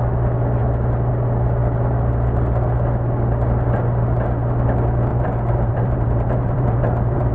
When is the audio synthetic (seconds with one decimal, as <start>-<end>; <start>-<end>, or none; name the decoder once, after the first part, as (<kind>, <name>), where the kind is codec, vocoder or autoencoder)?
5.1-7.3 (vocoder, BigVGAN v2)